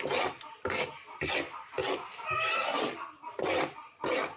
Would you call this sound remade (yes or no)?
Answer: no